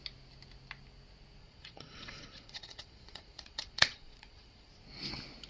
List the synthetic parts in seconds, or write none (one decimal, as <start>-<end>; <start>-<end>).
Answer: 1.4-4.7